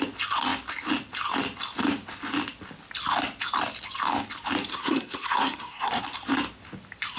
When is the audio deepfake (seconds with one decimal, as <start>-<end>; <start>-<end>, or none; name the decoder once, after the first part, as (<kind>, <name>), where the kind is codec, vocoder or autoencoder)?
4.7-6.0 (codec, SNAC)